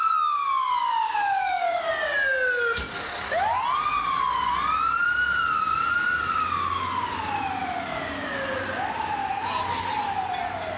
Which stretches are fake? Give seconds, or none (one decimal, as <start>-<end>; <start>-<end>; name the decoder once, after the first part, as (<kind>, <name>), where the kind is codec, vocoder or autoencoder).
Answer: 0.8-1.8 (codec, DAC)